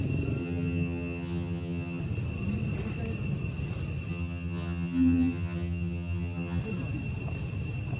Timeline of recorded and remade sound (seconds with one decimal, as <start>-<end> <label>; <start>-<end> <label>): 0.0-0.4 recorded; 0.4-2.0 remade; 2.0-4.1 recorded; 4.1-6.6 remade; 6.6-8.0 recorded